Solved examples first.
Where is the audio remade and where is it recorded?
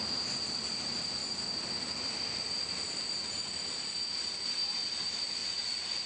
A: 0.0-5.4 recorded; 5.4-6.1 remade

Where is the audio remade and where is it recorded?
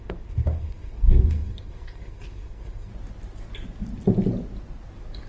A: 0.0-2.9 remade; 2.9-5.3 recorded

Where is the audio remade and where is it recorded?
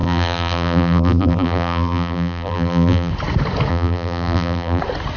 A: 0.0-3.1 remade; 3.1-3.7 recorded; 3.7-4.8 remade; 4.8-5.2 recorded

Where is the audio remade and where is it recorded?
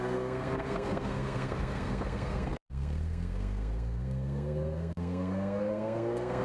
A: 0.0-6.4 remade